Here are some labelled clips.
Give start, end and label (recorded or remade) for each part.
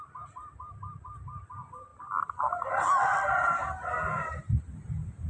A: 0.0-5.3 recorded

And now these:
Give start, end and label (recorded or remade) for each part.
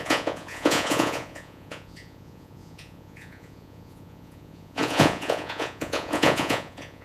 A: 0.0-7.0 remade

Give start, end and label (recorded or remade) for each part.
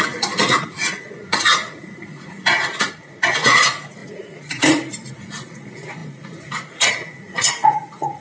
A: 0.0-8.2 remade